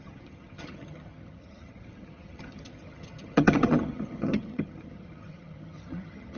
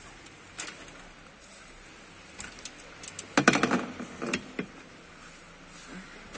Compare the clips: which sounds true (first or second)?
second